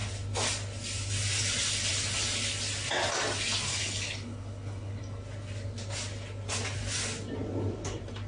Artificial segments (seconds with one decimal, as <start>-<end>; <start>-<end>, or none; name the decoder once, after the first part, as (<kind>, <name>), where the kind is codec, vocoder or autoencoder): 3.7-5.0 (codec, HILCodec)